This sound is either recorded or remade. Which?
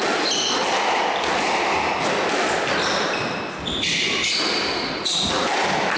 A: recorded